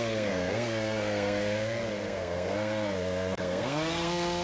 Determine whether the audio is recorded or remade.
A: remade